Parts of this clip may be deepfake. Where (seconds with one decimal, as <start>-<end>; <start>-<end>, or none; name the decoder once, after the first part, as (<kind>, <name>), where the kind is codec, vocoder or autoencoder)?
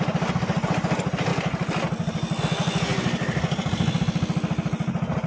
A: 2.9-4.0 (vocoder, BigVGAN v2)